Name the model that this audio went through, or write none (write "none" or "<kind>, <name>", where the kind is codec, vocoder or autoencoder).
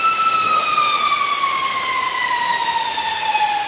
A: vocoder, BigVGAN v2